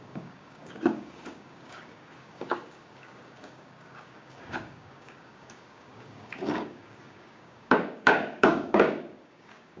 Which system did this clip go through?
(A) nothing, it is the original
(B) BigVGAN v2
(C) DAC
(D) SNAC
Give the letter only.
C